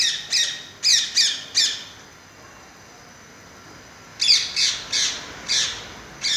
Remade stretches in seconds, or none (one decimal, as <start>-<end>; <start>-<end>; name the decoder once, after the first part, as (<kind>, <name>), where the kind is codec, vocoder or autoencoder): none